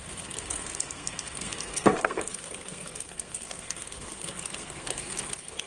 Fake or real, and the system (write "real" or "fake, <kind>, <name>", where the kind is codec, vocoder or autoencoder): fake, codec, SNAC